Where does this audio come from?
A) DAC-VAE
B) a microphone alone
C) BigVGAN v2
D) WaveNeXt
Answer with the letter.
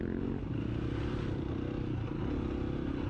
B